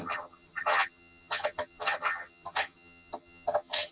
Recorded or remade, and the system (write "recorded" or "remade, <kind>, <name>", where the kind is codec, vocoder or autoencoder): remade, vocoder, HiFi-GAN